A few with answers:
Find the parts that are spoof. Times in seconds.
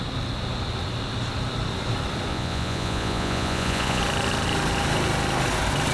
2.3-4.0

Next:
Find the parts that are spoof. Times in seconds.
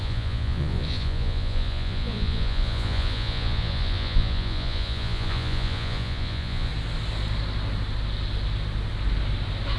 0.0-6.7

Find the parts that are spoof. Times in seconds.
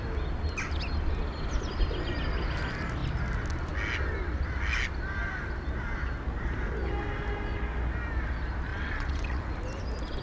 8.7-9.4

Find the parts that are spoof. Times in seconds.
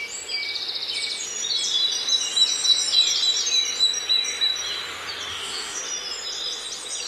5.3-5.8